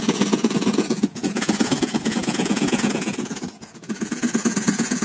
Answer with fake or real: fake